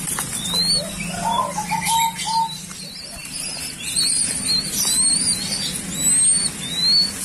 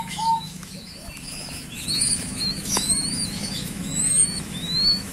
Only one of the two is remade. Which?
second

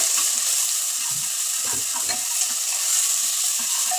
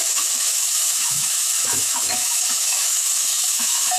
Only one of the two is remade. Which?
second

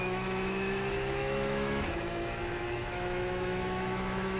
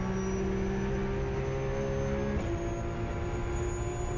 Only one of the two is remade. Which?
first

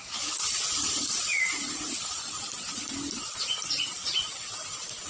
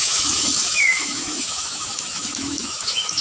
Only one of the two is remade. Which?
second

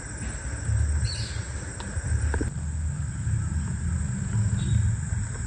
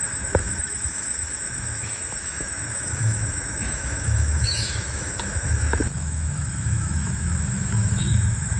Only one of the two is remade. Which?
second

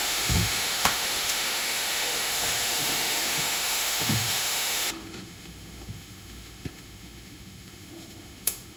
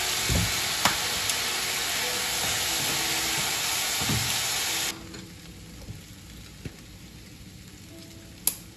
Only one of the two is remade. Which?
first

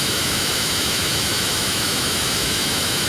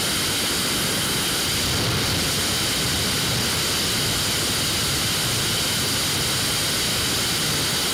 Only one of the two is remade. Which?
first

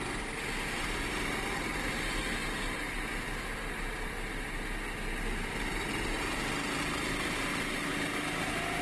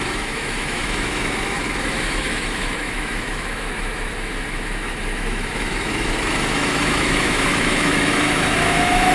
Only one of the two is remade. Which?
second